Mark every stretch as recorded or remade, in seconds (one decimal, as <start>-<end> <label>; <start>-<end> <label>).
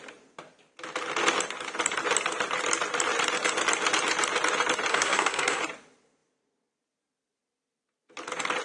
0.0-4.9 recorded; 4.9-5.6 remade; 5.6-8.6 recorded